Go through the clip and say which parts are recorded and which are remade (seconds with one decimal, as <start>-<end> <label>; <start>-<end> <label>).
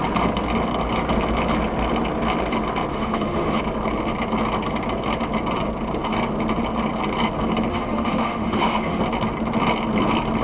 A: 0.0-2.9 recorded; 2.9-3.6 remade; 3.6-7.7 recorded; 7.7-9.0 remade; 9.0-10.4 recorded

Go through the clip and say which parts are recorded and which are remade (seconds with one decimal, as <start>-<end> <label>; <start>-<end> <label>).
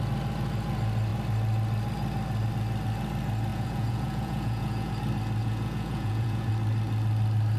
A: 0.0-3.5 recorded; 3.5-4.9 remade; 4.9-5.4 recorded; 5.4-6.5 remade; 6.5-7.6 recorded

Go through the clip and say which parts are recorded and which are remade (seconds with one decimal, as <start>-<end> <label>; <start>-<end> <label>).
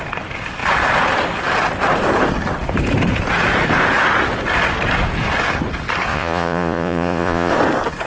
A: 0.0-6.1 recorded; 6.1-7.5 remade; 7.5-8.1 recorded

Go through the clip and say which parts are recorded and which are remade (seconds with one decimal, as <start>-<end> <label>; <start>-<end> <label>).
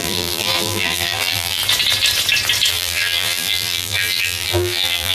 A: 0.0-1.6 remade; 1.6-2.7 recorded; 2.7-5.1 remade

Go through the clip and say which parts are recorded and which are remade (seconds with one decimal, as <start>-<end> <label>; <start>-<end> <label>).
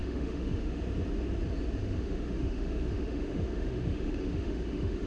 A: 0.0-0.8 remade; 0.8-1.8 recorded; 1.8-5.1 remade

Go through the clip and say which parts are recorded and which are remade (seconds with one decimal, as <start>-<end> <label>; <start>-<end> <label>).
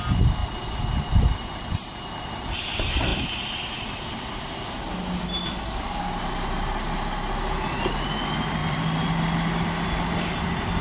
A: 0.0-8.6 recorded; 8.6-9.1 remade; 9.1-10.8 recorded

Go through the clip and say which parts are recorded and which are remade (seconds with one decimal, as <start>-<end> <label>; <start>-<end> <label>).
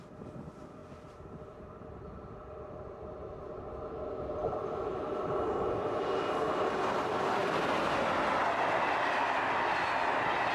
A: 0.0-0.8 recorded; 0.8-2.8 remade; 2.8-7.4 recorded; 7.4-8.4 remade; 8.4-10.5 recorded